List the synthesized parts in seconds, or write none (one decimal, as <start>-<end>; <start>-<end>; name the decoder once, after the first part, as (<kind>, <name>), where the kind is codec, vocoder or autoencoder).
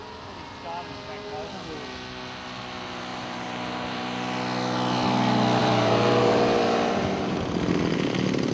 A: 3.1-4.2 (vocoder, BigVGAN v2); 5.6-7.4